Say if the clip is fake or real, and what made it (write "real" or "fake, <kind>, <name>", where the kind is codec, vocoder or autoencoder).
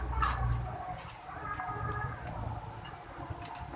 real